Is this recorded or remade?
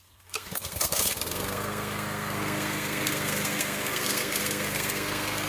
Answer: remade